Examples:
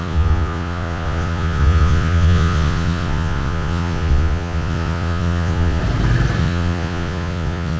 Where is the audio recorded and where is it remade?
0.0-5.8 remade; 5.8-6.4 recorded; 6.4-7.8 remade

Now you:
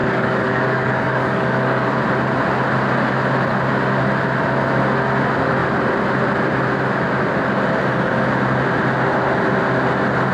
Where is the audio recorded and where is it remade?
0.0-2.0 remade; 2.0-10.3 recorded

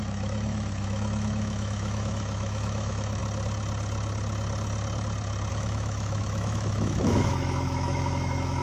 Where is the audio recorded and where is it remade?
0.0-3.2 remade; 3.2-5.5 recorded; 5.5-8.6 remade